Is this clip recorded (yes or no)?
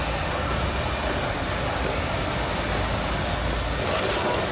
yes